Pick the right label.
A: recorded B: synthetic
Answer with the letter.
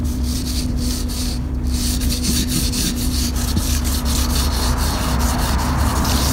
A